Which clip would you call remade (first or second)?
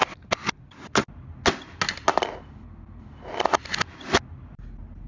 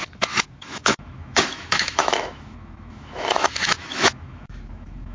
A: second